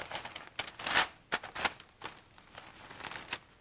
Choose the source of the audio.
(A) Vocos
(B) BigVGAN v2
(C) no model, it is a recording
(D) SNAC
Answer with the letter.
C